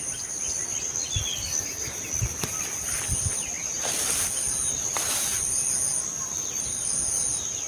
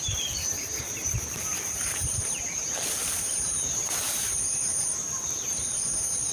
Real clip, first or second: first